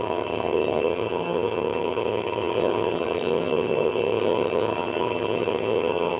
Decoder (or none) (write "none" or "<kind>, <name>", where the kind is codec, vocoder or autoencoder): vocoder, HiFi-GAN